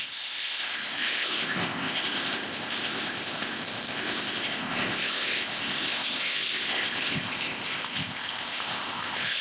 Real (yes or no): no